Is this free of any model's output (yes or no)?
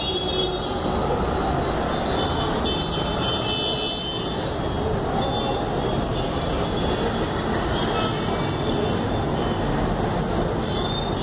yes